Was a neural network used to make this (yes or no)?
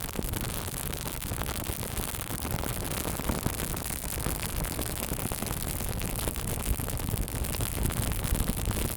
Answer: no